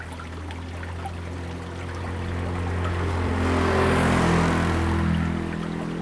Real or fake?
real